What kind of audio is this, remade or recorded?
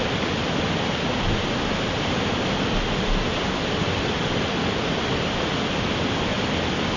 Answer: recorded